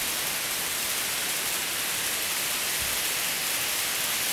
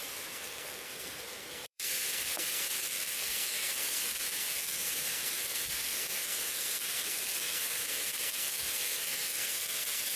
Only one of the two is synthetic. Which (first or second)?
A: second